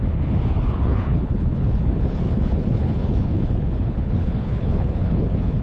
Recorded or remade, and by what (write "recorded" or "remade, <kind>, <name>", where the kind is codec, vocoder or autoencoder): remade, codec, HILCodec